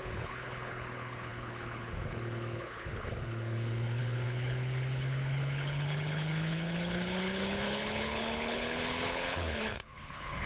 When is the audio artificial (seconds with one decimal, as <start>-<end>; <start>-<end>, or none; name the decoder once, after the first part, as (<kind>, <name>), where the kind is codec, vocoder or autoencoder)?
0.0-10.5 (codec, HILCodec)